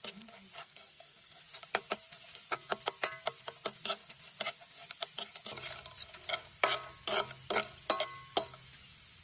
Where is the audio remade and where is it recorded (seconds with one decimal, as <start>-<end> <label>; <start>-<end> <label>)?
0.0-0.6 recorded; 0.6-1.4 remade; 1.4-9.2 recorded

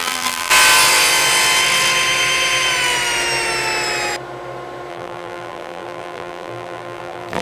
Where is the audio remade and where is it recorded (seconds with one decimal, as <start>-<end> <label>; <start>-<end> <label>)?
0.0-0.5 remade; 0.5-4.9 recorded; 4.9-7.4 remade